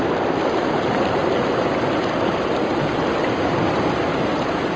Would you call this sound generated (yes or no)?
no